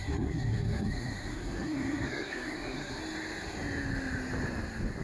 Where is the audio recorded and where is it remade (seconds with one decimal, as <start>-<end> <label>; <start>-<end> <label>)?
0.0-3.0 remade; 3.0-5.0 recorded